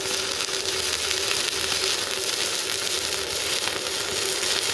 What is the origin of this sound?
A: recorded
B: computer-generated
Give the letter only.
A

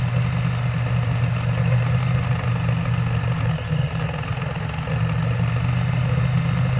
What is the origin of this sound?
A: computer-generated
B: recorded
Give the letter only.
B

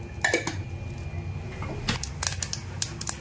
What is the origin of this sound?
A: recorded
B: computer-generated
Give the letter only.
A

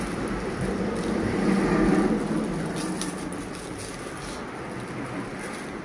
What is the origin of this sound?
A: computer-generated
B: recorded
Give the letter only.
A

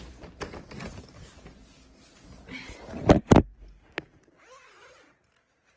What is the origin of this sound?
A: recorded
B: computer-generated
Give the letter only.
A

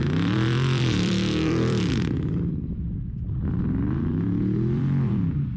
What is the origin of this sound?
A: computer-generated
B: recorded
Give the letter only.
A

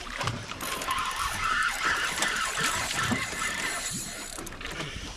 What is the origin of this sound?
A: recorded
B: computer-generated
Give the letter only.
B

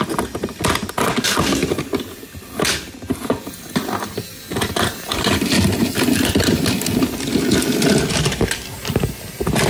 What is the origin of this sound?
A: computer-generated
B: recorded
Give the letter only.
B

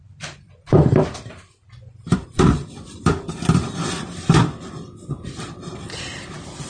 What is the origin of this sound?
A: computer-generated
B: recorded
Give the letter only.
A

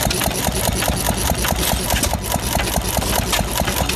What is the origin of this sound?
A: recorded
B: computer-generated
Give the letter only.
A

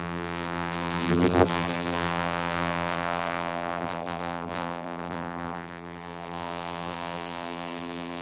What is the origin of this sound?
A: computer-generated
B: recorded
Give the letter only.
A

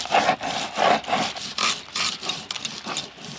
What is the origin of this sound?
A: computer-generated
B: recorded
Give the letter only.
B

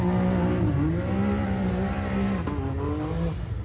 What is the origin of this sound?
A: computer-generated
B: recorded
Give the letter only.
B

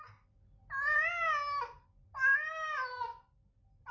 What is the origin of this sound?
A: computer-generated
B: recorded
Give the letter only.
B